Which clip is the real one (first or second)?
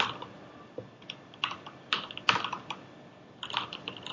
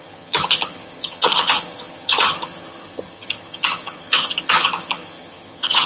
first